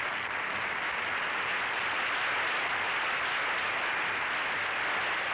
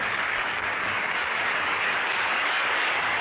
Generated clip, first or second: second